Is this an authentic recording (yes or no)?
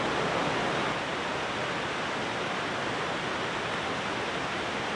yes